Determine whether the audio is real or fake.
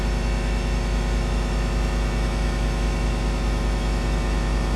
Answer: fake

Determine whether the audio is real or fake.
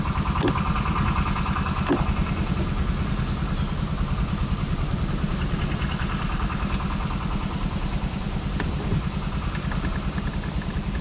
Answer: real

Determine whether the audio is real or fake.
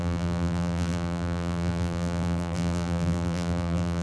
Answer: fake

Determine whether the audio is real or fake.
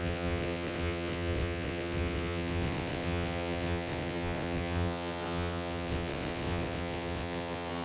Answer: fake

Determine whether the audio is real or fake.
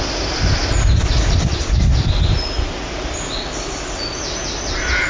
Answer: real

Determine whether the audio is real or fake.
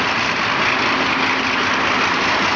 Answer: real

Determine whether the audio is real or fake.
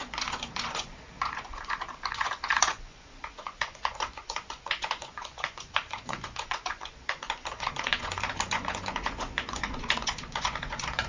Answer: fake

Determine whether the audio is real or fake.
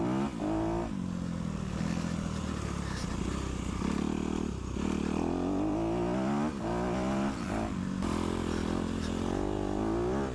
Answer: real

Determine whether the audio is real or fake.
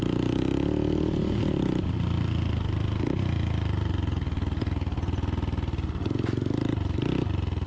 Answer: real